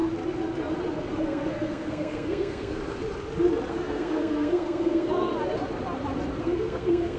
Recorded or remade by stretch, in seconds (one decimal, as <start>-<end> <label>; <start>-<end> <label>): 0.0-1.1 recorded; 1.1-2.8 remade; 2.8-3.7 recorded; 3.7-5.3 remade; 5.3-6.4 recorded; 6.4-7.2 remade

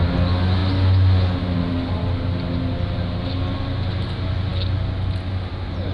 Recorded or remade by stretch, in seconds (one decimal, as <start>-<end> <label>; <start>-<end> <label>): 0.0-5.9 recorded